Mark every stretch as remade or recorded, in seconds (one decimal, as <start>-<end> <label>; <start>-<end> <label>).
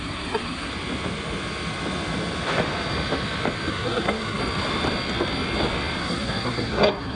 0.0-0.7 remade; 0.7-3.7 recorded; 3.7-4.4 remade; 4.4-6.0 recorded; 6.0-7.2 remade